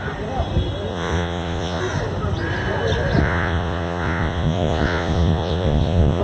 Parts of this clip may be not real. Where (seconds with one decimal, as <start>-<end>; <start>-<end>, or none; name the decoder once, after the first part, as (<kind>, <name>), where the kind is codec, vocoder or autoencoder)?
0.9-1.8 (vocoder, Vocos); 3.2-6.2